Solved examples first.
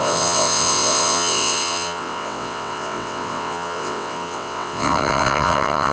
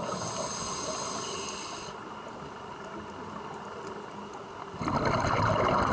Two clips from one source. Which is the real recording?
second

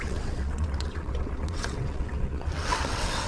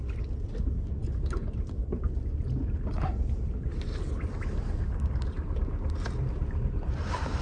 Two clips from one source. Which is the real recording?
second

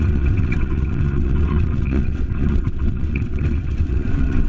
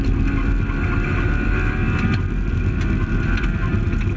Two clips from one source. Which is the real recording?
second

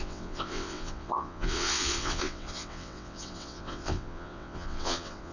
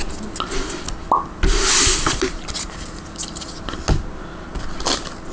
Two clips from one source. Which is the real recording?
second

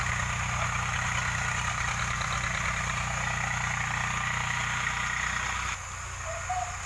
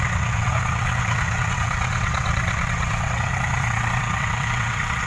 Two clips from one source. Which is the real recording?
first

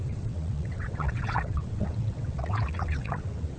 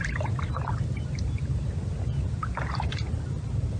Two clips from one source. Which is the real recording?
second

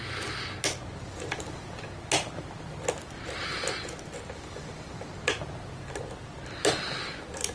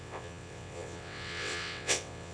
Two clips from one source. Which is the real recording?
first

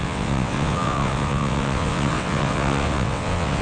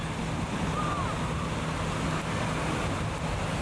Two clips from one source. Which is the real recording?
second